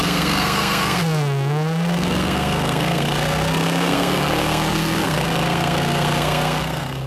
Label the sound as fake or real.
fake